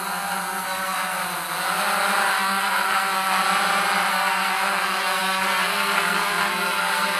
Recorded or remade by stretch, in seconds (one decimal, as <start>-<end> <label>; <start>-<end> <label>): 0.0-1.2 remade; 1.2-2.3 recorded; 2.3-3.4 remade; 3.4-4.1 recorded; 4.1-7.2 remade